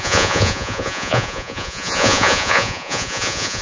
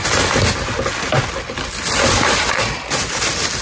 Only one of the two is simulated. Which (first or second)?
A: first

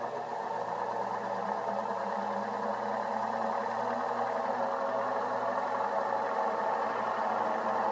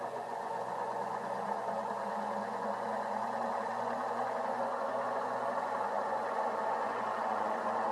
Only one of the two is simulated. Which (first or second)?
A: second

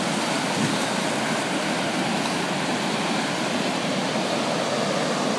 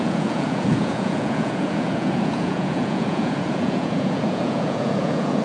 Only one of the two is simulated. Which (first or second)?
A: second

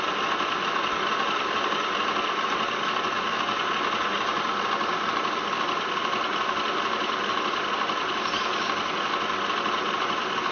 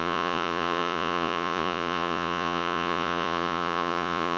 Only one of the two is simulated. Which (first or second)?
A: second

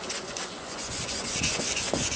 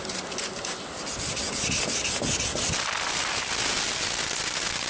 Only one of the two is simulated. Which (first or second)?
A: first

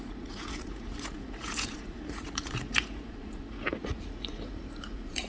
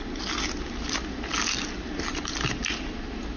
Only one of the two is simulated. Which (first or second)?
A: first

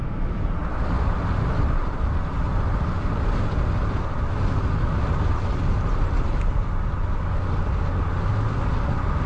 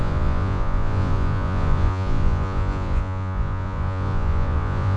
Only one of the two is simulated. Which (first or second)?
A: second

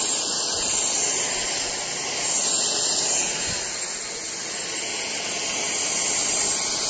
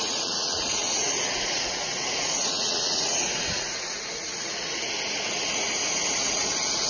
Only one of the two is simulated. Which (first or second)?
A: second